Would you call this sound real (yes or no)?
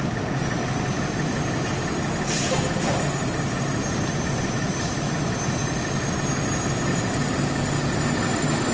yes